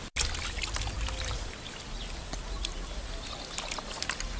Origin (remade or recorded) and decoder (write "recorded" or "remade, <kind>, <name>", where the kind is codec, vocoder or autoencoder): recorded